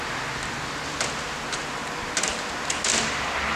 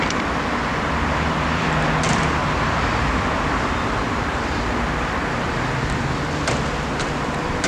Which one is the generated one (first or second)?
second